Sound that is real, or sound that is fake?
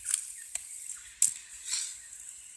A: real